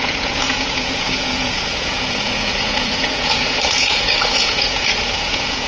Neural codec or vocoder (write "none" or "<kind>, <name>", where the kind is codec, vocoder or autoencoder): vocoder, Vocos